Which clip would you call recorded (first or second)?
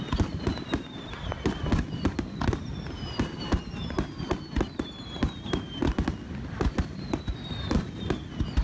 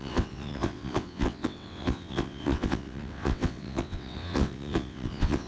first